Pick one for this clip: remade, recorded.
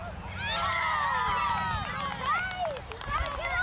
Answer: recorded